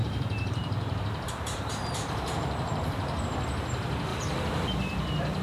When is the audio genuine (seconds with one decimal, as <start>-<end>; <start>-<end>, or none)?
3.2-4.1; 4.7-5.4